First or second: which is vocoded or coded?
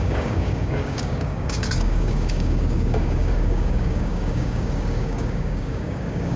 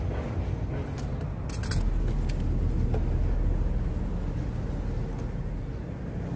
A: first